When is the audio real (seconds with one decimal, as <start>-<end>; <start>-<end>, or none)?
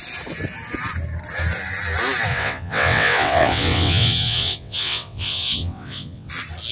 0.0-2.3; 6.3-6.7